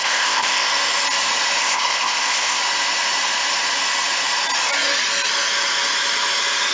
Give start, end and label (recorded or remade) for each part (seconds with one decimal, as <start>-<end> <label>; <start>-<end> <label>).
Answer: 0.0-0.7 remade; 0.7-1.6 recorded; 1.6-2.6 remade; 2.6-6.7 recorded